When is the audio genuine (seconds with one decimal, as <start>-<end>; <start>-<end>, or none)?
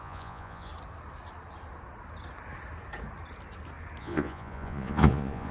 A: 0.7-4.0